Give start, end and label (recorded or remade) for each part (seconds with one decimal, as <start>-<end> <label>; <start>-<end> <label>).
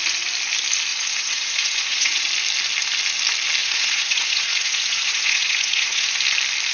0.0-0.9 recorded; 0.9-2.3 remade; 2.3-3.6 recorded; 3.6-6.1 remade; 6.1-6.7 recorded